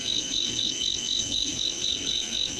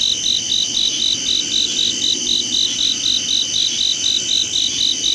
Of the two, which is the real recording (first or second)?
second